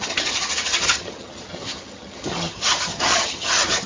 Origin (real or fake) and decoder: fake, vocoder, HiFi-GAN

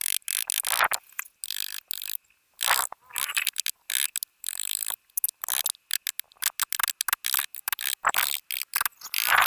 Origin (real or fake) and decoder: real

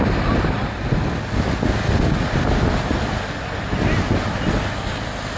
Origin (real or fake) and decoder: real